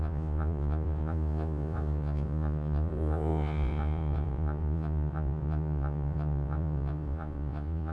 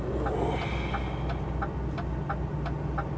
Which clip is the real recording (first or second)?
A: second